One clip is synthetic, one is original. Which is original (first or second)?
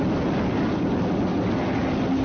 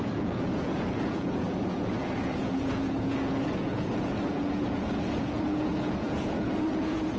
first